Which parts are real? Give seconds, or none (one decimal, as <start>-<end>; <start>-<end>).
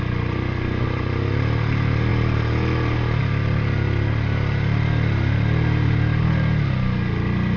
0.0-7.6